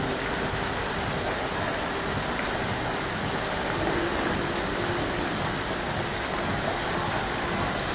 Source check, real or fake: real